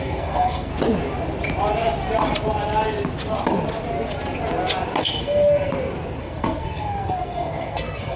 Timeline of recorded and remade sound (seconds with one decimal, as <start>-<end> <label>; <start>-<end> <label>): 0.0-0.7 remade; 0.7-5.0 recorded; 5.0-5.7 remade; 5.7-6.2 recorded; 6.2-8.2 remade